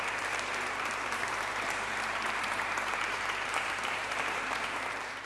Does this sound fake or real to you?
fake